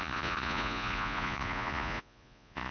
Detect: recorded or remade remade